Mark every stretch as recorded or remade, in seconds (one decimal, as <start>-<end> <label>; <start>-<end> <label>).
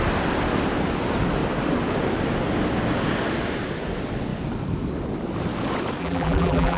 0.0-6.0 recorded; 6.0-6.8 remade